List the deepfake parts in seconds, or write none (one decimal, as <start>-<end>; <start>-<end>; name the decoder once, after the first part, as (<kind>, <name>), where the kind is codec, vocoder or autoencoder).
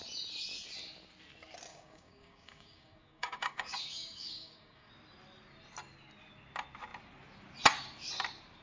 1.7-4.9 (codec, DAC)